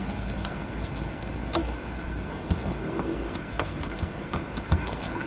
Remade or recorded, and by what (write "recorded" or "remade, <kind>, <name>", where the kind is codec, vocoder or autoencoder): remade, codec, SNAC